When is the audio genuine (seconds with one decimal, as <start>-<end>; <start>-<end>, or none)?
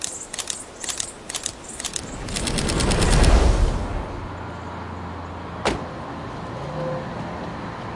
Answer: 0.0-7.9